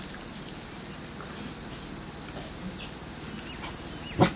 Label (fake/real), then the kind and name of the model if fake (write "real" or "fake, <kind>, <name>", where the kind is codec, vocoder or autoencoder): real